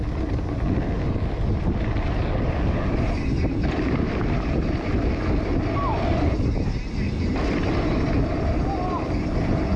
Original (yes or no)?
yes